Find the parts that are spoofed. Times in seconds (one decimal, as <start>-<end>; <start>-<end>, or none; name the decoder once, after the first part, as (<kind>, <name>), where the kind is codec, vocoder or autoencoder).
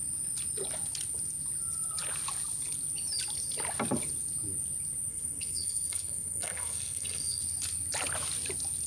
5.1-7.4 (codec, SNAC)